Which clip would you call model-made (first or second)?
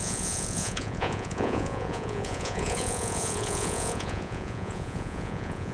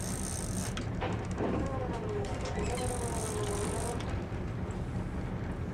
first